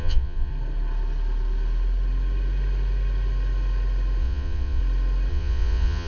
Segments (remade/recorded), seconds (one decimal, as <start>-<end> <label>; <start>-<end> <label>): 0.0-0.5 remade; 0.5-4.2 recorded; 4.2-4.8 remade; 4.8-5.3 recorded; 5.3-6.1 remade